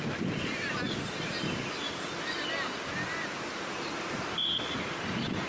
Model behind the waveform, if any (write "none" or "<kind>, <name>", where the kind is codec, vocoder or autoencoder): none